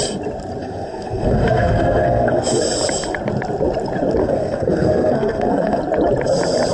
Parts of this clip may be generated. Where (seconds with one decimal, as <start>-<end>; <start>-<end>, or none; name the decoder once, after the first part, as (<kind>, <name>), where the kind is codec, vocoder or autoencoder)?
0.6-2.6 (codec, SNAC); 4.2-5.8